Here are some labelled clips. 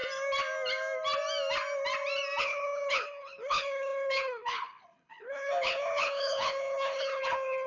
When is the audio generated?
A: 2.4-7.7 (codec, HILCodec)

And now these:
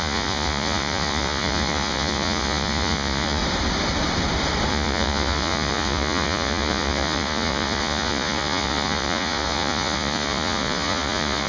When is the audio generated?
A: 0.0-3.4 (vocoder, Vocos); 4.7-11.5

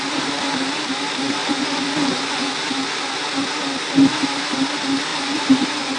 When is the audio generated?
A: 1.4-2.5 (vocoder, Vocos); 5.1-6.0

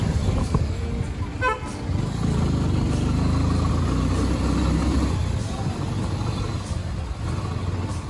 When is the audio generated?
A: 0.4-0.9 (codec, SNAC)

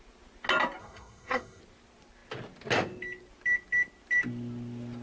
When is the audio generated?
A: 0.8-1.6 (codec, SNAC)

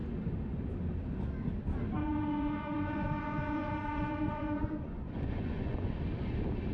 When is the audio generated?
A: 2.0-6.0 (vocoder, Vocos)

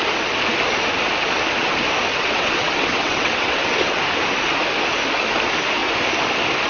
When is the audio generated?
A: 2.1-4.0 (vocoder, WaveNeXt)

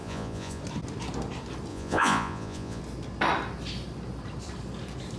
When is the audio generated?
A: 0.0-0.6 (vocoder, Vocos); 1.7-2.8